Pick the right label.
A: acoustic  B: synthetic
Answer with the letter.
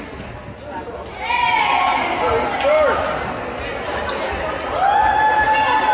A